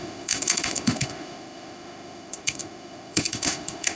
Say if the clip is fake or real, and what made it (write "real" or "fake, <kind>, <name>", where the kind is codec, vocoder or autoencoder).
fake, autoencoder, DAC-VAE